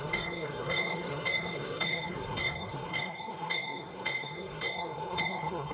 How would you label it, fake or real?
fake